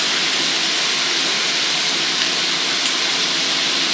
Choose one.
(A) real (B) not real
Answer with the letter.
A